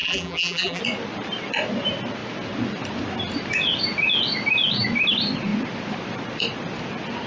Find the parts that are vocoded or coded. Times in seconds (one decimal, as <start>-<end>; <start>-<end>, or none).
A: 0.0-0.8